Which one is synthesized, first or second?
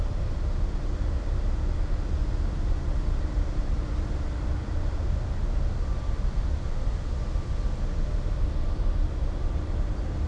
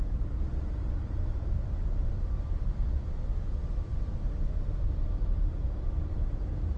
second